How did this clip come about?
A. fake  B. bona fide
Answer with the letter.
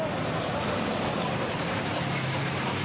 B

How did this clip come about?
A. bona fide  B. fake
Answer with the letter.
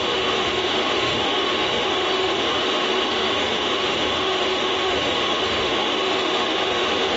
B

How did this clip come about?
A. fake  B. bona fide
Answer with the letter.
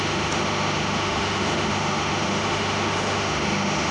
A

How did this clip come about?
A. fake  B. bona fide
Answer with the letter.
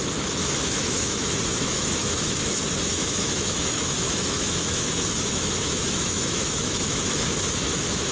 A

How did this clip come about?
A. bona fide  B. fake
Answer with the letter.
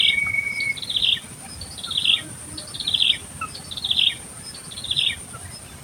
A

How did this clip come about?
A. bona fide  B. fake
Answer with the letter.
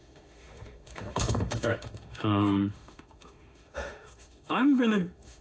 B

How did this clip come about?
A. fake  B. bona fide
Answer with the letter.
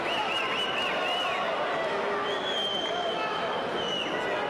B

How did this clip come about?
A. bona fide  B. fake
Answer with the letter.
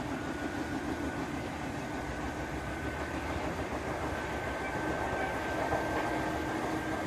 A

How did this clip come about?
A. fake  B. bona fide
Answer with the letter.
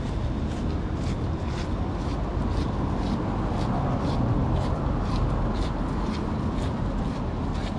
B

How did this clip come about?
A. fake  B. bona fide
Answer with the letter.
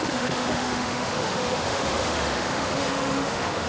A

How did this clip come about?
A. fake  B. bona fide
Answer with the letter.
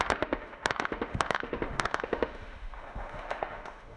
A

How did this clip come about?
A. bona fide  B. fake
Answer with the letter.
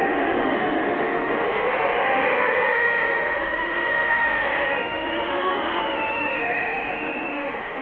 B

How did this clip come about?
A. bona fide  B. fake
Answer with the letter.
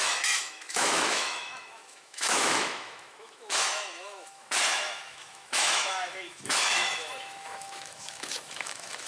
B